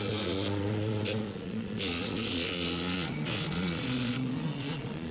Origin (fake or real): fake